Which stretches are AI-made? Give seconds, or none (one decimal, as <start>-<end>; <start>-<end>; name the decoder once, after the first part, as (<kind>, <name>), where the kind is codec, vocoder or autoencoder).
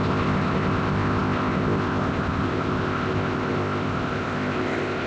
0.0-5.1 (codec, ZipCodec)